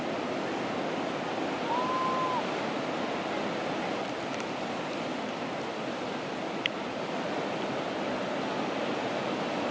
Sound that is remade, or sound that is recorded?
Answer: recorded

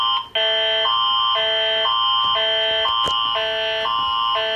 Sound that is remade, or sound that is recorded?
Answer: recorded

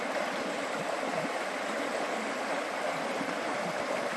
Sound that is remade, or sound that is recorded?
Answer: remade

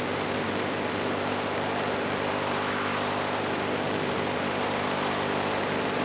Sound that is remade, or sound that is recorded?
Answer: remade